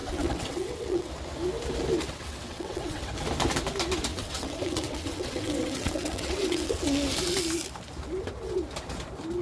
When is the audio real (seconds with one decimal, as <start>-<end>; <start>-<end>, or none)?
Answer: 1.1-2.0; 3.1-4.1; 6.8-9.4